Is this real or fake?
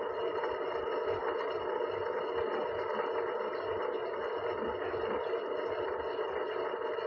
real